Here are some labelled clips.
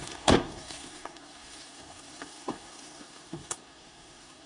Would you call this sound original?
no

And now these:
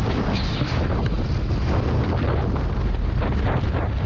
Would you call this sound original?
yes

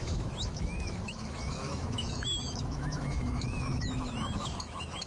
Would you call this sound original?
no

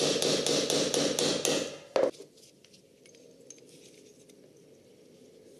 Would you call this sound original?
yes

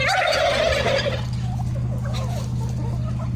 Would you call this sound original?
yes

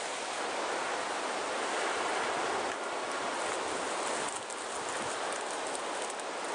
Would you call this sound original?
yes